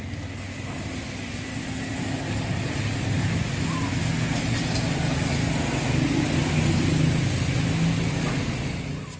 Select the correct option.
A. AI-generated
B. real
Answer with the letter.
B